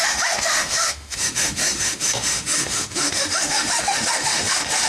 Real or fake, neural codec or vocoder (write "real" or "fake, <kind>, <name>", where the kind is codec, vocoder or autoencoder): fake, autoencoder, DAC-VAE